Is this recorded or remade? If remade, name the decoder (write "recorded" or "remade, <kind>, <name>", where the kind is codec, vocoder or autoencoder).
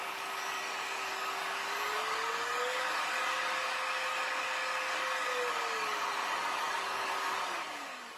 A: remade, codec, DAC